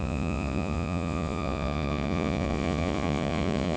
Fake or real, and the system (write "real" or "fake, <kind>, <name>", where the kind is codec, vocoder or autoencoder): fake, vocoder, Vocos